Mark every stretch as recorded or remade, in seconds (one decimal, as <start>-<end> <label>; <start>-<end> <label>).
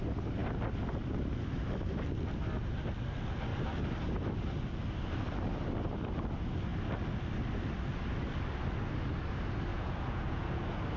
0.0-9.7 recorded; 9.7-10.6 remade; 10.6-11.0 recorded